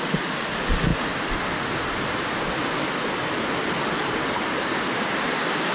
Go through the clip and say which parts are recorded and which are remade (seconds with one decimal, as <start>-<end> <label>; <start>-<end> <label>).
0.0-5.7 recorded